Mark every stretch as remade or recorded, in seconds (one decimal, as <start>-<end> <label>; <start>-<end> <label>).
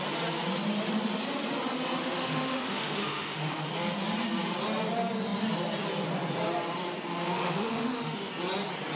0.0-2.0 recorded; 2.0-3.7 remade; 3.7-7.2 recorded; 7.2-8.3 remade; 8.3-9.0 recorded